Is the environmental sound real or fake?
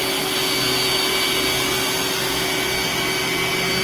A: real